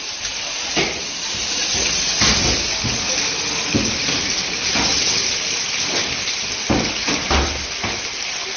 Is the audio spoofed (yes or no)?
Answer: no